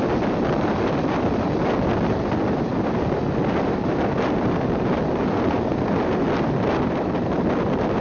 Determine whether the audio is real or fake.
real